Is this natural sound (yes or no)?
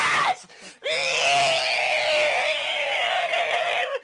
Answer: yes